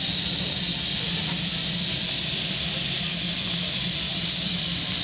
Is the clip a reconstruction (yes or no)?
no